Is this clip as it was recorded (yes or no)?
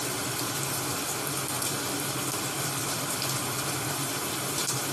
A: yes